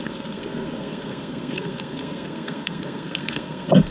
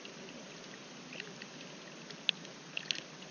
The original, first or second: second